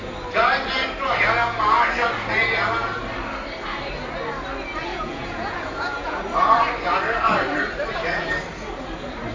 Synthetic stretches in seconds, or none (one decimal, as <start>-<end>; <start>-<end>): 4.9-6.2

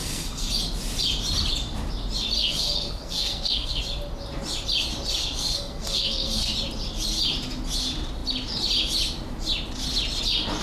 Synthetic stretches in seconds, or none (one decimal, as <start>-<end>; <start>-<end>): 0.0-0.5; 2.4-3.8; 5.2-6.5

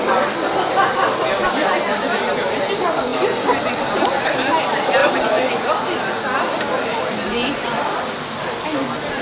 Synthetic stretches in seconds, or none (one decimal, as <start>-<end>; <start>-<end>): none

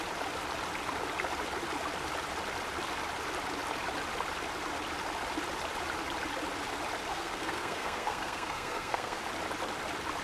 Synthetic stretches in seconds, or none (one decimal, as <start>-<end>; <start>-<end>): 7.1-9.2

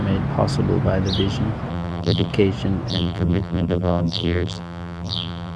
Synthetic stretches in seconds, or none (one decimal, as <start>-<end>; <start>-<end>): 1.7-2.3; 2.9-5.6

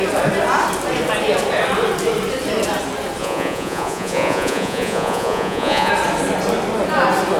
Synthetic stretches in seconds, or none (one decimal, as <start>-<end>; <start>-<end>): 3.2-5.9